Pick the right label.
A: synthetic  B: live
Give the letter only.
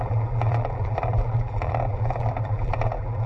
A